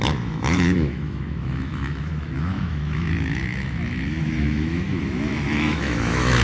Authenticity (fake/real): fake